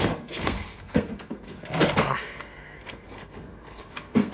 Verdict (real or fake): fake